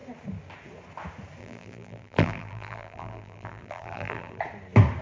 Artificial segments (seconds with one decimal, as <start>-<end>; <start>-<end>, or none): 1.4-4.4